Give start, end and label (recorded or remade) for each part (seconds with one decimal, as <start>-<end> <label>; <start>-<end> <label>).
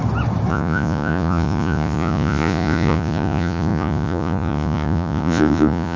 0.0-0.5 recorded; 0.5-6.0 remade